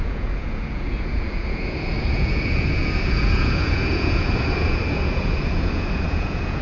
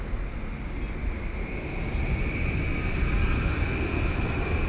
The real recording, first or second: second